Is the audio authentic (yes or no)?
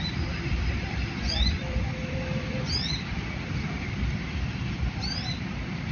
no